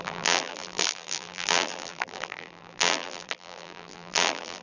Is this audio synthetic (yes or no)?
yes